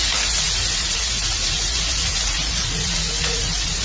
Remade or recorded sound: remade